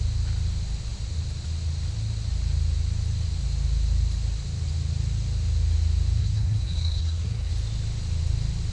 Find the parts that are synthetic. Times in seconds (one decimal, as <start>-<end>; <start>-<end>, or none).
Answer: 6.2-7.5